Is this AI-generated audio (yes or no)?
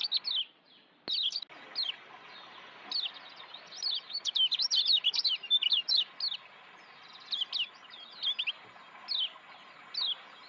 no